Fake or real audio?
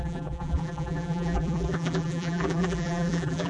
fake